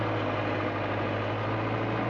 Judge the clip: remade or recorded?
recorded